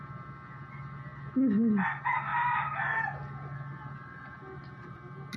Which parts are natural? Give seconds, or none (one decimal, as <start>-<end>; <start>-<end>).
0.0-5.4